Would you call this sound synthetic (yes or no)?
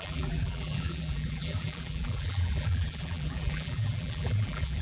yes